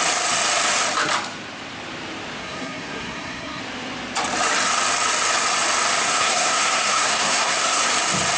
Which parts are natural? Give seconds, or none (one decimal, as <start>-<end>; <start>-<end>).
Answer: 0.0-2.4; 3.6-6.0; 7.9-8.4